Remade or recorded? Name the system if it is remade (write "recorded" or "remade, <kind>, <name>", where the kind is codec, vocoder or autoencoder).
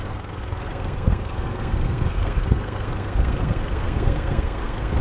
remade, codec, SNAC